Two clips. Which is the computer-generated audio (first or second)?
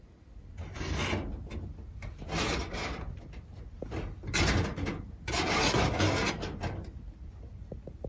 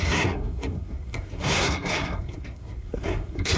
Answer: second